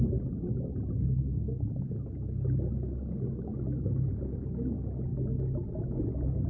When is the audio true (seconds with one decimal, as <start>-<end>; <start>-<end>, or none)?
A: 0.0-3.5; 4.1-6.5